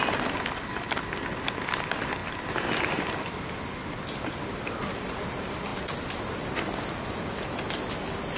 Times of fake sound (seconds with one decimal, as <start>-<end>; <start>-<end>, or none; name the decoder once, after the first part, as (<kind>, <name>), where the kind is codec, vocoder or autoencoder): none